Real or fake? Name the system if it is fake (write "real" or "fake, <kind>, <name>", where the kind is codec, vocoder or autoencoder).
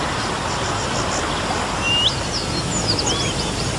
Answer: real